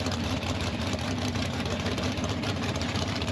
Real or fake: fake